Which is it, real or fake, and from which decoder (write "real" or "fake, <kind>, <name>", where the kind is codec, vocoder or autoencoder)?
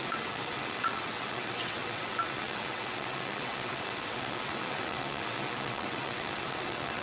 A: fake, vocoder, WaveNeXt